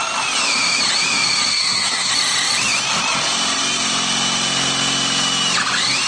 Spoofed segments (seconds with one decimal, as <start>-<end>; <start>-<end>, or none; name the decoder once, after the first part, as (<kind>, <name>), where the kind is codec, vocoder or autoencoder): 1.5-2.1 (codec, SNAC)